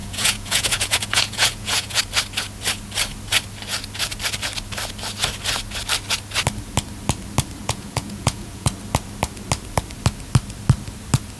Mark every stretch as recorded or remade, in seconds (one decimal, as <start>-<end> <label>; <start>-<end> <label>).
0.0-2.0 remade; 2.0-7.6 recorded; 7.6-8.7 remade; 8.7-11.4 recorded